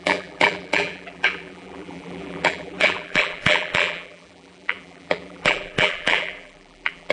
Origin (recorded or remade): remade